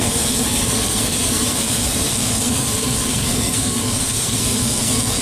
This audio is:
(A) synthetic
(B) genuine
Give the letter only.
A